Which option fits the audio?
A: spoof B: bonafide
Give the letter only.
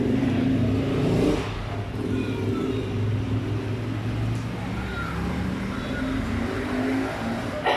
B